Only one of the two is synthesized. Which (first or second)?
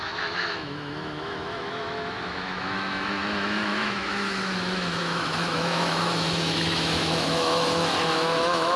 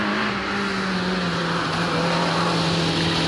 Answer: first